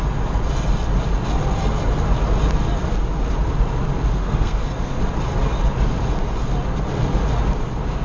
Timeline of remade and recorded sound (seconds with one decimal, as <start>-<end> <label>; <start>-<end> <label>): 0.0-4.1 recorded; 4.1-5.0 remade; 5.0-8.0 recorded